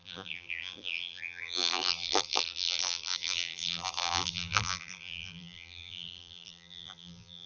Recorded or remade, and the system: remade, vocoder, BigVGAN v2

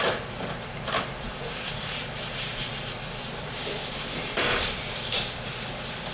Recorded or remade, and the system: remade, vocoder, BigVGAN v2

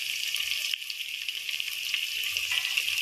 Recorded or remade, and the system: recorded